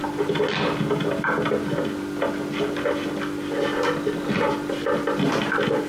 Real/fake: real